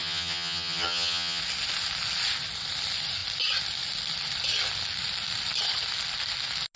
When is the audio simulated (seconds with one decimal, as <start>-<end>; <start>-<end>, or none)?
0.0-1.4